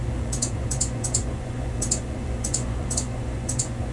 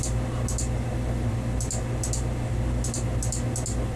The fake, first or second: first